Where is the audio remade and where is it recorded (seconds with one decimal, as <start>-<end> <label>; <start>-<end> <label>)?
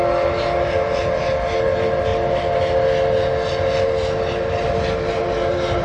0.0-5.8 recorded